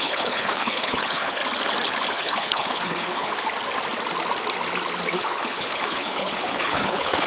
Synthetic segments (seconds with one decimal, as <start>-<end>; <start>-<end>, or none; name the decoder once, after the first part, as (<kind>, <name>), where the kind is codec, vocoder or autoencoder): 0.0-1.4 (codec, HILCodec); 2.1-3.3; 5.2-7.3

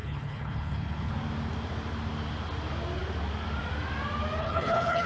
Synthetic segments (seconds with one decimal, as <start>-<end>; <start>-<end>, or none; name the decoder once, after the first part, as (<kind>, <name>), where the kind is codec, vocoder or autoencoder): 0.0-1.1 (codec, HILCodec); 4.4-5.1

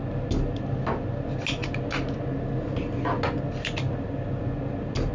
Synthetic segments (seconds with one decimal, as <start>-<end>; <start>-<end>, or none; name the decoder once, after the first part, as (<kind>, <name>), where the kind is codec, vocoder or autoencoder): none